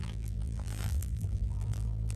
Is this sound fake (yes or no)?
yes